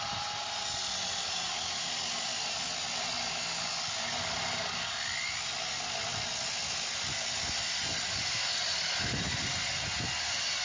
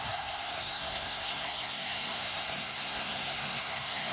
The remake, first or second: second